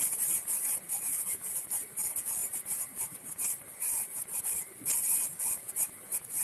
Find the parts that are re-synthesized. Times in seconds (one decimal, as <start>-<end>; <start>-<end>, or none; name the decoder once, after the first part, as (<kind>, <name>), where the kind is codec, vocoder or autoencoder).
2.4-4.4 (vocoder, BigVGAN v2)